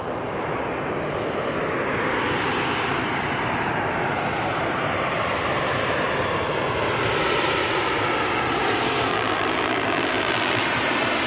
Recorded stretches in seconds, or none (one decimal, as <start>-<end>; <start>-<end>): 0.0-9.1; 10.6-11.3